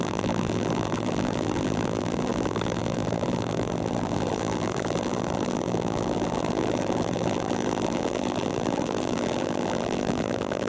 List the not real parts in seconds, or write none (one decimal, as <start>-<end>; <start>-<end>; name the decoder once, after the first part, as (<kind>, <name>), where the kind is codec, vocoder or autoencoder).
0.0-10.7 (vocoder, BigVGAN v2)